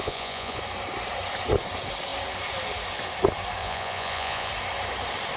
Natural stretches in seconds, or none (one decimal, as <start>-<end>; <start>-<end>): 0.6-3.6; 4.5-5.4